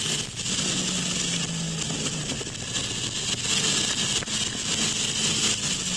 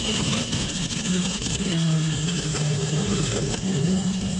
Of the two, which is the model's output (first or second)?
second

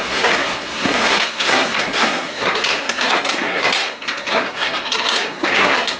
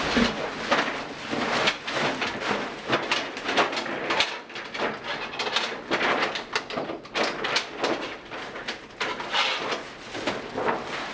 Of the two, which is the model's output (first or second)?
first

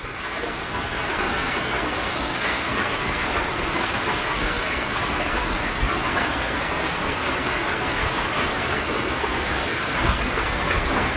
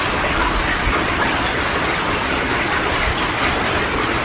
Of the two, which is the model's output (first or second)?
first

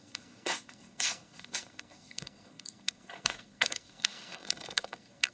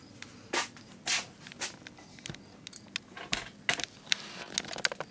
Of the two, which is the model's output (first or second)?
first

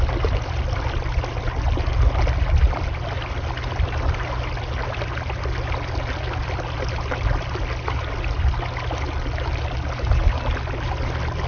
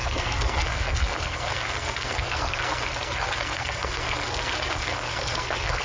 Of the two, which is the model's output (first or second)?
second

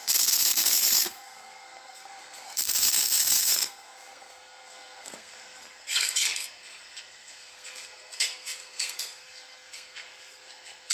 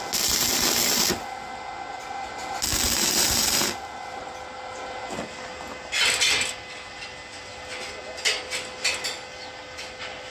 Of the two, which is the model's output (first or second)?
first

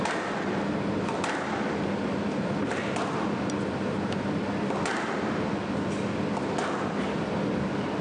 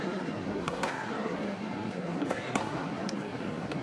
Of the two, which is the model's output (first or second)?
second